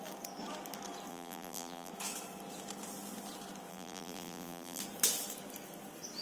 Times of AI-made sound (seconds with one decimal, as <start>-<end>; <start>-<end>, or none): 1.1-1.9; 3.7-4.8